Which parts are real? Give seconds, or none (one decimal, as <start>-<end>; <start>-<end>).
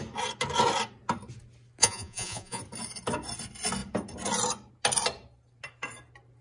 0.0-1.8; 2.6-6.4